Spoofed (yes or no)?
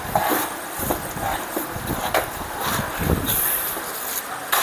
no